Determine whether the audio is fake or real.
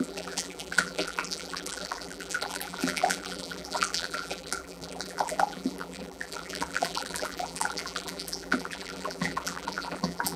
fake